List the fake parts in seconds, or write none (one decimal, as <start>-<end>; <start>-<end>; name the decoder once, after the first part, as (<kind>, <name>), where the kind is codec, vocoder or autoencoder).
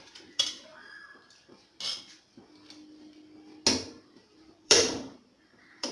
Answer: 0.0-0.7 (vocoder, BigVGAN v2); 4.2-5.9